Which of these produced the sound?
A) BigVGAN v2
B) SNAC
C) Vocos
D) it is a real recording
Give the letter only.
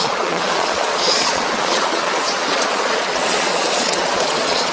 C